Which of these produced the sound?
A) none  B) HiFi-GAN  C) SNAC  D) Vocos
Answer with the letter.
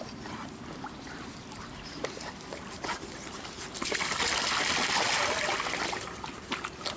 A